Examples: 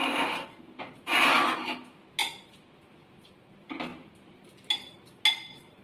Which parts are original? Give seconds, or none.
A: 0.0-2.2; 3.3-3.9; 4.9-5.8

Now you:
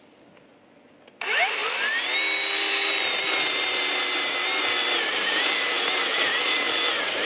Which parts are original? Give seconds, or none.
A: 0.0-4.8; 6.3-7.3